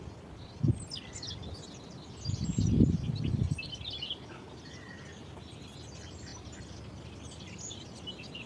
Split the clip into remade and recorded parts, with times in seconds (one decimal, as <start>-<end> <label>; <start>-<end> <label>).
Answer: 0.0-8.5 recorded